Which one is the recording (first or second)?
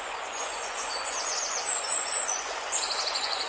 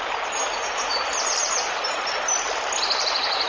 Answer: second